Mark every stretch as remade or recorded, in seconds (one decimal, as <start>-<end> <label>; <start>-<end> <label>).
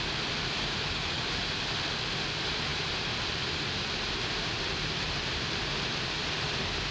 0.0-2.7 recorded; 2.7-5.6 remade; 5.6-6.9 recorded